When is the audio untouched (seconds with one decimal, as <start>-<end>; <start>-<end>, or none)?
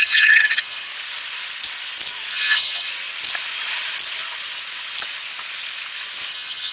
0.9-2.3; 2.9-6.3